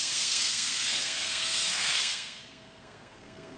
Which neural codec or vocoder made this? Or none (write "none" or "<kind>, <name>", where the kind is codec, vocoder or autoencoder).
codec, SNAC